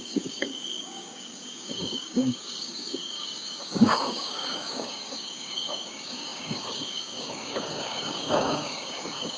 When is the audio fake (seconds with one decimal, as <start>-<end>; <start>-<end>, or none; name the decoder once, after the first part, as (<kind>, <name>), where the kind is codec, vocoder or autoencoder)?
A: 0.0-9.4 (codec, DAC)